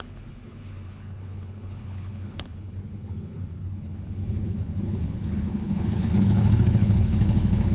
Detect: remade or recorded remade